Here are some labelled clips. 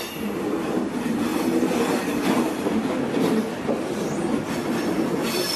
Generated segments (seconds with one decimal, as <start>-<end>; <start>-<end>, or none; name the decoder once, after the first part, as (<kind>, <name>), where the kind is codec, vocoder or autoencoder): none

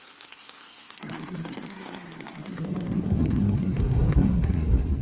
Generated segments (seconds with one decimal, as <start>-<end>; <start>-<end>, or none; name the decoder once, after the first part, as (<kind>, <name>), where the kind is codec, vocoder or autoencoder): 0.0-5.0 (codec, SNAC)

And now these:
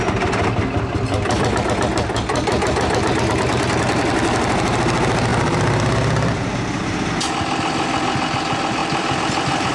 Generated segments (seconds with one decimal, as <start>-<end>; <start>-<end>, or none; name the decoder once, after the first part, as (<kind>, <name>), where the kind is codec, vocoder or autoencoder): 5.3-7.1 (vocoder, BigVGAN v2); 8.8-9.7

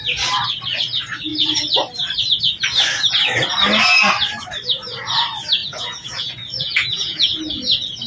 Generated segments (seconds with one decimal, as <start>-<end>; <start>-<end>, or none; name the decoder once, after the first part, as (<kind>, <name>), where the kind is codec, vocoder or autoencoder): 5.6-7.4 (vocoder, Vocos)

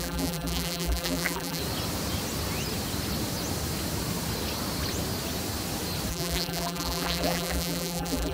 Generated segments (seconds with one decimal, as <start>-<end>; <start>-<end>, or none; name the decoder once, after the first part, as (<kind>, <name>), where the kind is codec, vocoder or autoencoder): 0.0-1.6 (vocoder, BigVGAN v2); 6.1-8.3

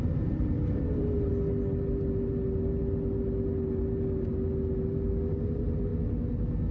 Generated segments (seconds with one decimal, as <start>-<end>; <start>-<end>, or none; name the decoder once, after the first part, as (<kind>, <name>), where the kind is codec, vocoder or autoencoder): 0.0-1.3 (vocoder, BigVGAN v2); 5.3-5.9

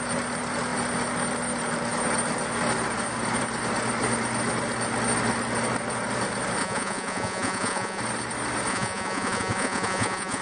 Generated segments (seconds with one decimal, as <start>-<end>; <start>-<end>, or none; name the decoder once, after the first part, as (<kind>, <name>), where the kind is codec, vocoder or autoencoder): 6.6-8.0 (vocoder, Vocos); 8.7-10.4